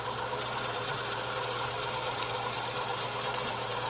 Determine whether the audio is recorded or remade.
remade